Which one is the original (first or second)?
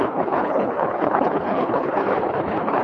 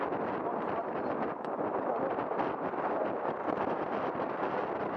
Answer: second